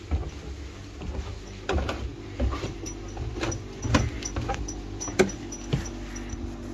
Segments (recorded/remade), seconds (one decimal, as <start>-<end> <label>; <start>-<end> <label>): 0.0-6.7 recorded